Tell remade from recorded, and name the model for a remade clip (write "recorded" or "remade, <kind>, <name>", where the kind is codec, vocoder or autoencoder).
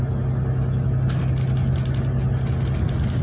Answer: recorded